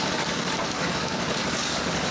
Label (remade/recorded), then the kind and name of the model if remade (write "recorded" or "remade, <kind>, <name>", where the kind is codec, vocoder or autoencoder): remade, codec, DAC